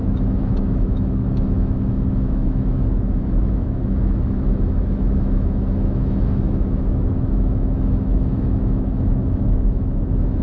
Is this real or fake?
fake